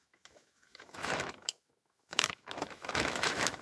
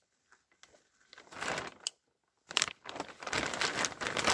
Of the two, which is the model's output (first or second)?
first